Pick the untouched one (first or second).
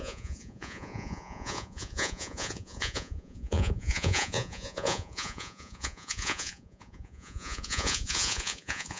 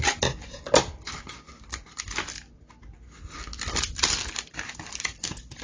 second